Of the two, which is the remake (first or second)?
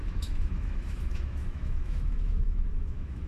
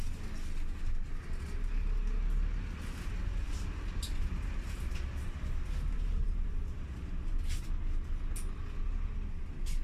first